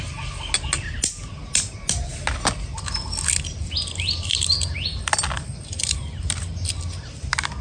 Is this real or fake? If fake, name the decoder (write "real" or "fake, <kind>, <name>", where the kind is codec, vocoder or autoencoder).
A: real